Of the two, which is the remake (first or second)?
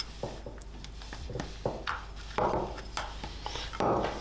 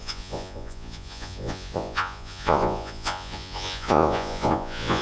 second